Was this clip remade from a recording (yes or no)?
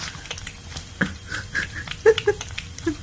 no